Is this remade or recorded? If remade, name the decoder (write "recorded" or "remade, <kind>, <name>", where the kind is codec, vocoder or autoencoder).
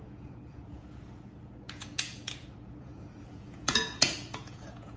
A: remade, vocoder, Vocos